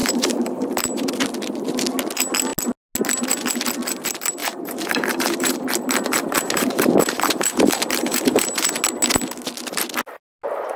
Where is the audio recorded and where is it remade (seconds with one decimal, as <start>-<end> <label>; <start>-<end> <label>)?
0.0-1.1 remade; 1.1-4.4 recorded; 4.4-8.7 remade; 8.7-10.8 recorded